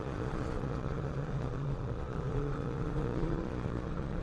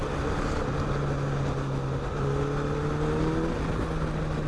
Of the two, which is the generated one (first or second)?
first